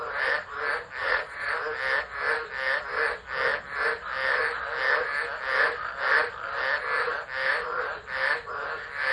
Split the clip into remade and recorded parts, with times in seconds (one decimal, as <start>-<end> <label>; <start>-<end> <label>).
0.0-1.0 recorded; 1.0-1.5 remade; 1.5-9.1 recorded